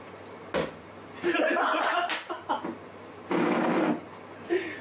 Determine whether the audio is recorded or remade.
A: recorded